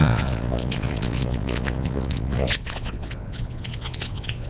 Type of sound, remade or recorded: remade